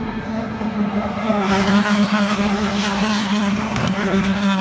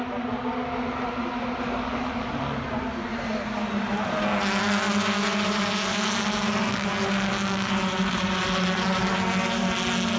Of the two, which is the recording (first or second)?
second